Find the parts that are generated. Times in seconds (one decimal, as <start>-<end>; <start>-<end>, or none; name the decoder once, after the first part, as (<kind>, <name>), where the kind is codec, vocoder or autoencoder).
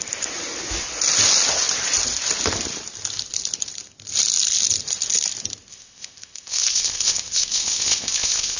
5.7-8.6 (codec, ZipCodec)